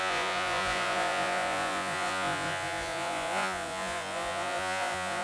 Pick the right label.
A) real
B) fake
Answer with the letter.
B